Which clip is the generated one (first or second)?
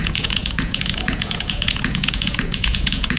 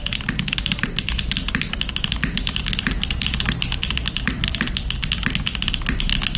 first